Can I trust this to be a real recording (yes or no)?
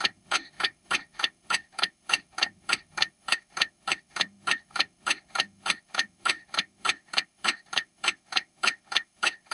no